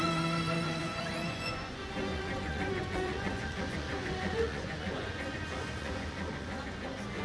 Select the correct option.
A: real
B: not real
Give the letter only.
B